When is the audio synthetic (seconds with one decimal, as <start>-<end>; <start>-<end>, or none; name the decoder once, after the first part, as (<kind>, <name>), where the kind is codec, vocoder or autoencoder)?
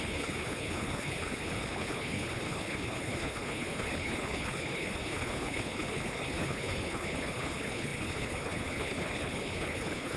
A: 0.0-10.2 (codec, HILCodec)